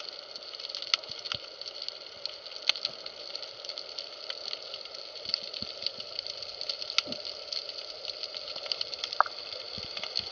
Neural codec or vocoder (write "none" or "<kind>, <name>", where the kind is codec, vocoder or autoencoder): none